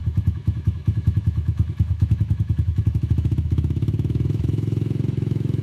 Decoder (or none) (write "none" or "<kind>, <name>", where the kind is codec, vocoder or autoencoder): autoencoder, DAC-VAE